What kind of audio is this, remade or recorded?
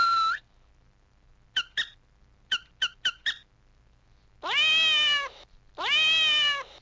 recorded